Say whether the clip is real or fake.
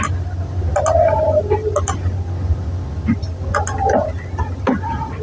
real